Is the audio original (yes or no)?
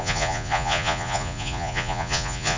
no